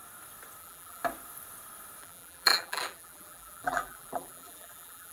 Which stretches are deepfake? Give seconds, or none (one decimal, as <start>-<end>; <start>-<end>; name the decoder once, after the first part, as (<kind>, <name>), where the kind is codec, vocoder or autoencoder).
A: 0.6-1.0 (vocoder, BigVGAN v2); 2.0-5.1